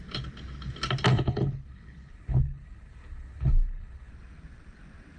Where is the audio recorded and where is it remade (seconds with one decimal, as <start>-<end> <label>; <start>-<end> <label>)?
0.0-1.1 recorded; 1.1-4.1 remade; 4.1-5.2 recorded